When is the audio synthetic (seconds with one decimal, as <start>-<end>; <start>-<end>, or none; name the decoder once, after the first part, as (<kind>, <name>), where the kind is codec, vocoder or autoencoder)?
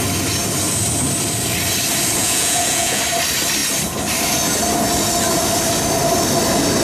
2.2-3.0 (vocoder, Vocos)